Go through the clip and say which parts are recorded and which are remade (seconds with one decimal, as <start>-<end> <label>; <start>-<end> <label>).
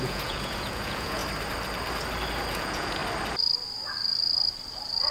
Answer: 0.0-1.2 remade; 1.2-2.5 recorded; 2.5-3.0 remade; 3.0-5.1 recorded